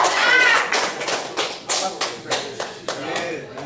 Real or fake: fake